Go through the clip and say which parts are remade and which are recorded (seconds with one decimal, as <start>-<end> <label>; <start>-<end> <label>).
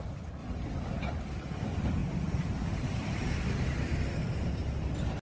0.0-0.4 remade; 0.4-1.4 recorded; 1.4-2.0 remade; 2.0-5.2 recorded